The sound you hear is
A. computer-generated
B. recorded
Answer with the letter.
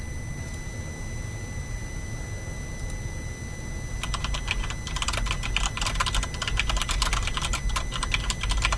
B